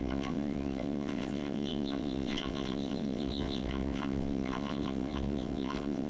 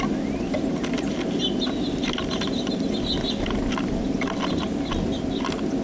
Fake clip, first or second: first